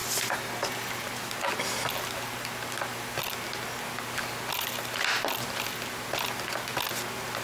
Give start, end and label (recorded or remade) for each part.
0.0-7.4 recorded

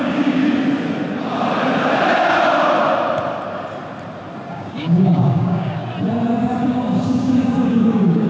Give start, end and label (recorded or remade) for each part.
0.0-0.4 remade; 0.4-4.5 recorded; 4.5-5.8 remade; 5.8-6.6 recorded; 6.6-8.3 remade

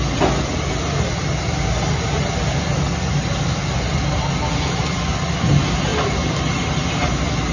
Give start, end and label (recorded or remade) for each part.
0.0-7.5 recorded

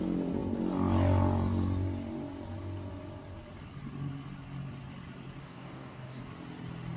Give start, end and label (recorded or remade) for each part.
0.0-5.4 recorded; 5.4-6.2 remade; 6.2-7.0 recorded